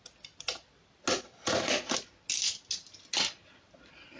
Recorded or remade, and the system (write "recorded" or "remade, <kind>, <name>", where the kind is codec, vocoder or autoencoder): recorded